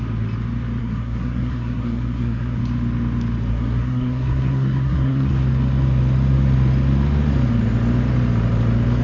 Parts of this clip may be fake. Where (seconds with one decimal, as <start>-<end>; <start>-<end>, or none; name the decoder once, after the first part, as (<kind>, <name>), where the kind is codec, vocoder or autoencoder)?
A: 0.8-2.6 (codec, SNAC); 3.5-5.3